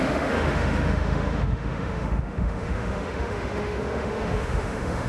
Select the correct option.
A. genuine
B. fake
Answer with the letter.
B